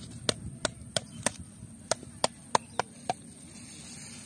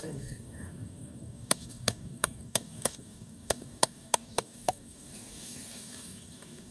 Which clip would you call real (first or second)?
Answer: first